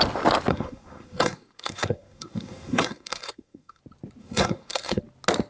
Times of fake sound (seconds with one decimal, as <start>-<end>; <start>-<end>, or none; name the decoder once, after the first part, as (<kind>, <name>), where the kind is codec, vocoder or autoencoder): 0.5-3.8 (codec, SNAC); 4.2-5.0